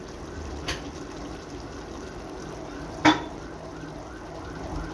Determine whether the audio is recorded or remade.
recorded